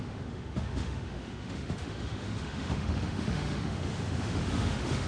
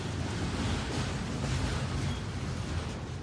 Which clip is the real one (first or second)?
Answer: second